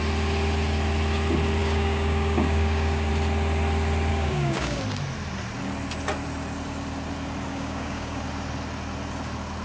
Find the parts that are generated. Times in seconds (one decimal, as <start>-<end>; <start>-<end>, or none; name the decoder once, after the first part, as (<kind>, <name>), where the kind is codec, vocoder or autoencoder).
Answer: 1.6-3.1 (codec, DAC); 4.1-4.8; 7.5-8.2